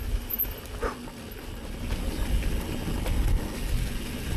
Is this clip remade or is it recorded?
recorded